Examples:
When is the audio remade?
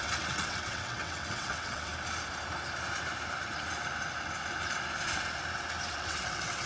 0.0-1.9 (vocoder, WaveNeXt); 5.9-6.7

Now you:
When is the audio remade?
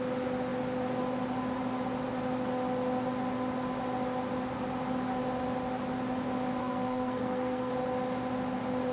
6.6-7.7 (codec, SNAC)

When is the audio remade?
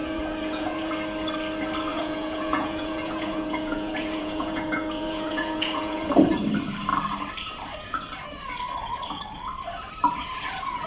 0.0-0.9 (vocoder, Vocos); 1.9-6.1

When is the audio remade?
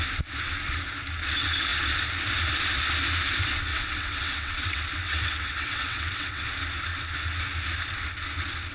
3.7-6.5 (vocoder, WaveNeXt)